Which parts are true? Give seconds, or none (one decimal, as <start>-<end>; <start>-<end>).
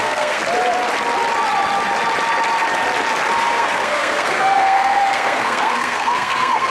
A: 0.4-3.4